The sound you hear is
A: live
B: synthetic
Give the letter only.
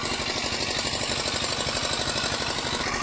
A